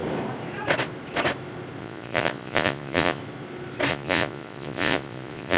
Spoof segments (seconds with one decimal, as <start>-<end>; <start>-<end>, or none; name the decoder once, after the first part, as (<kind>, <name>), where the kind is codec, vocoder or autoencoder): 1.8-3.2 (vocoder, Vocos); 3.9-5.6